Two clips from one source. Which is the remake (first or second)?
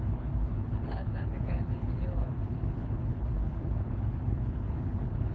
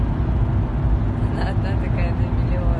first